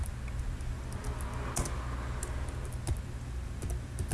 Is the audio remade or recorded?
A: recorded